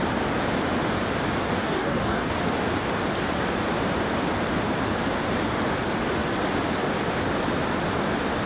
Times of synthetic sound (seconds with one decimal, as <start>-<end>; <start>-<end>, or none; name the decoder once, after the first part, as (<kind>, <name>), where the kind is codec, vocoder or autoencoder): 1.6-2.4 (codec, DAC)